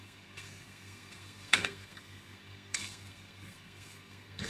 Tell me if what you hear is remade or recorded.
remade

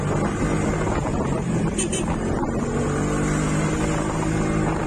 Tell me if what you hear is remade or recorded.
recorded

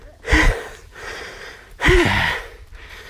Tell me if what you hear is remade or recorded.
recorded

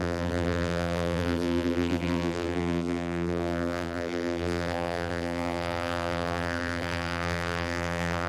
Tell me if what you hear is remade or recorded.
remade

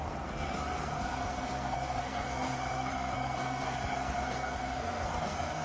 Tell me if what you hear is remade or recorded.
remade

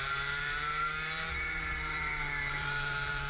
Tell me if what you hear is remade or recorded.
remade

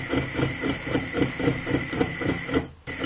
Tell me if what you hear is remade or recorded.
recorded